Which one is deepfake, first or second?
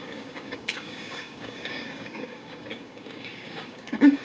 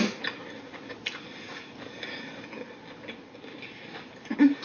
first